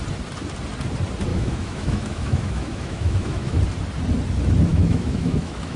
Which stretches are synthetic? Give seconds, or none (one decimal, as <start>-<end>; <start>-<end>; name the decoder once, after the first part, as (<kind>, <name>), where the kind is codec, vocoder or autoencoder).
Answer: 1.3-3.6 (autoencoder, DAC-VAE); 4.7-5.8